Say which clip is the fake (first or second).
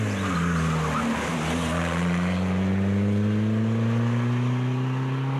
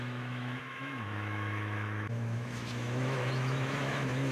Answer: second